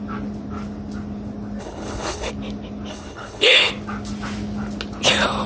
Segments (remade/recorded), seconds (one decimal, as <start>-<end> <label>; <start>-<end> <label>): 0.0-1.6 recorded; 1.6-2.3 remade; 2.3-2.9 recorded; 2.9-3.7 remade; 3.7-5.5 recorded